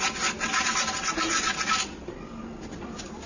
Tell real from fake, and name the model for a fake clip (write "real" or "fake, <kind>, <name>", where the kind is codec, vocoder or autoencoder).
real